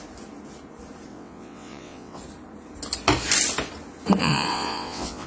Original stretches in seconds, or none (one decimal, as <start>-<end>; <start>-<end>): 0.0-1.1; 2.2-4.2